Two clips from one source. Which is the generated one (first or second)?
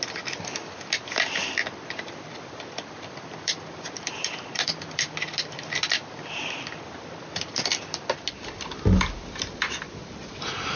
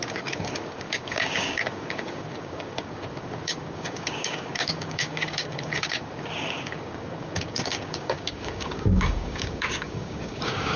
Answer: second